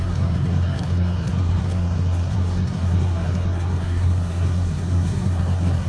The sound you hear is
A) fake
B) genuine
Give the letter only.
A